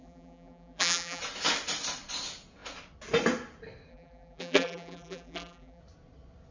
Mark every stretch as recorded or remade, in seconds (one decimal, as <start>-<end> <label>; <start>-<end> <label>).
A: 0.0-1.2 remade; 1.2-3.9 recorded; 3.9-5.8 remade; 5.8-6.5 recorded